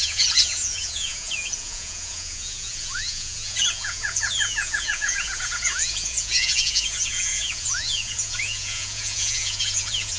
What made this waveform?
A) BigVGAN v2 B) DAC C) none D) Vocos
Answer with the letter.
D